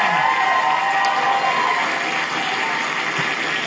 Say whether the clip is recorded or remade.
recorded